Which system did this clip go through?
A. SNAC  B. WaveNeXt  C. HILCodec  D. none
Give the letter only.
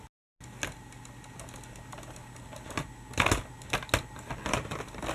D